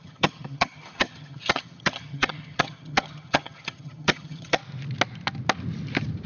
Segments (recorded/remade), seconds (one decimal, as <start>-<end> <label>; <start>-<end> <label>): 0.0-4.6 remade; 4.6-6.3 recorded